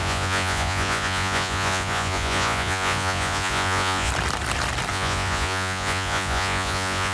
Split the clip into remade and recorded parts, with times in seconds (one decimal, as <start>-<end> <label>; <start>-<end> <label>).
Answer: 0.0-4.1 remade; 4.1-4.9 recorded; 4.9-7.1 remade

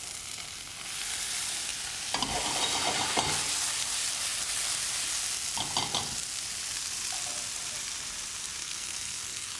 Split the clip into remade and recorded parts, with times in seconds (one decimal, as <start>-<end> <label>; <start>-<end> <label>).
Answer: 0.0-8.6 recorded; 8.6-9.6 remade

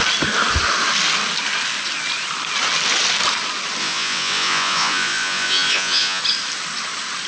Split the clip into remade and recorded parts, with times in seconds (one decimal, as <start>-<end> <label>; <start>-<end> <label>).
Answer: 0.0-3.8 recorded; 3.8-6.2 remade; 6.2-7.3 recorded

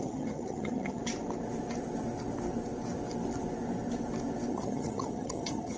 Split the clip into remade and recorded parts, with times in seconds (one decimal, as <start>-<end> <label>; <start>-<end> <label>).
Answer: 0.0-1.0 remade; 1.0-4.5 recorded; 4.5-5.8 remade

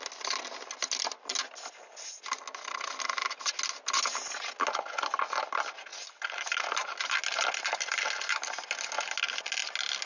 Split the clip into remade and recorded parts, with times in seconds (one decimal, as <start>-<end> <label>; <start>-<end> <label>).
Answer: 0.0-10.1 recorded

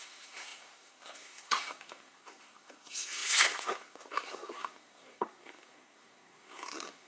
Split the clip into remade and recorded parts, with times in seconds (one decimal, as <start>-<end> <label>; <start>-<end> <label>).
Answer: 0.0-7.1 remade